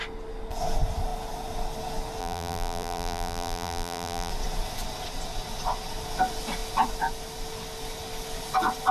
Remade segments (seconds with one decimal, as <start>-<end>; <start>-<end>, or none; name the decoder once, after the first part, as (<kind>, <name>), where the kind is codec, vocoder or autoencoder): 2.2-4.3 (vocoder, BigVGAN v2)